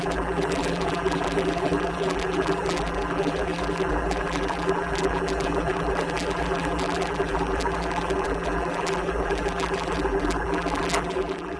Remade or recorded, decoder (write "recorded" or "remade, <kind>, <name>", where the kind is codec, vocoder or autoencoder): remade, vocoder, BigVGAN v2